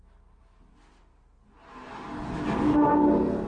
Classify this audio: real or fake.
real